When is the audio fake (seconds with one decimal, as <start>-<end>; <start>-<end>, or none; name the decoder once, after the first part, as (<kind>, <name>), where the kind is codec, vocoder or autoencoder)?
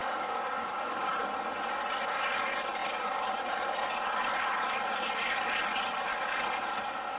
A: 0.0-1.1 (codec, DAC)